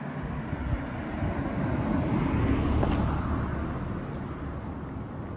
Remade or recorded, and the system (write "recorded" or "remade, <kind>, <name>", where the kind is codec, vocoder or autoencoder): recorded